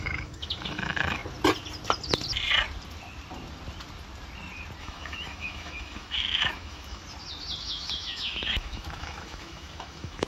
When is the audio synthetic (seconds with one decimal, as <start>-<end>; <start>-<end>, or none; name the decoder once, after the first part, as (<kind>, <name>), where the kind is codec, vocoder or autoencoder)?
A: 0.0-1.2 (autoencoder, DAC-VAE); 4.8-7.0; 7.6-10.3